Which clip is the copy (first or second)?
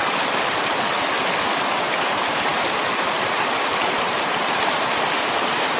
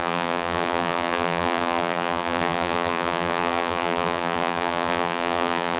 second